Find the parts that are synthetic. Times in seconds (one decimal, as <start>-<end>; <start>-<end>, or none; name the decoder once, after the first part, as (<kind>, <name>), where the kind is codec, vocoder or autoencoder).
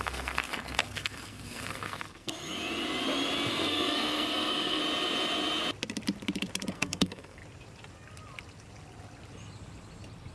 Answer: 0.0-2.4 (codec, SNAC); 3.5-4.8; 6.7-7.4